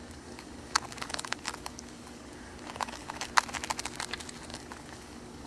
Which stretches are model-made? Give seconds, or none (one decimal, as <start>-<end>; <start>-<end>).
0.0-3.3; 4.5-5.5